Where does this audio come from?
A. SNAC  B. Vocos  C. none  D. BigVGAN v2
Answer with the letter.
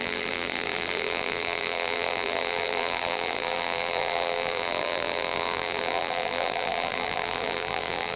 D